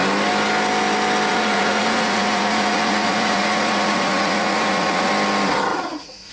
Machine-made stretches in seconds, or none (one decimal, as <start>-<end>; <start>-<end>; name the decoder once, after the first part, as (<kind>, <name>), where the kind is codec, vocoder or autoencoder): 1.3-5.1 (vocoder, Vocos); 5.7-6.3